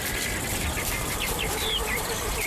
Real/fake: fake